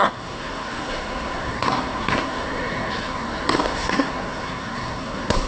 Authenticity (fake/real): fake